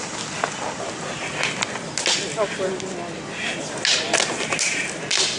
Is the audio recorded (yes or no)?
yes